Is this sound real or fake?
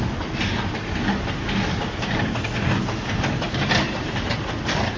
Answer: real